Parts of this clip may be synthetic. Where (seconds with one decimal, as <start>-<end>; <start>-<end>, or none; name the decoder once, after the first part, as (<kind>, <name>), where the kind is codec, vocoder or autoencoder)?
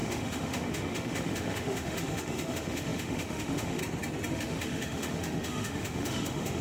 0.0-3.8 (autoencoder, DAC-VAE); 4.3-6.6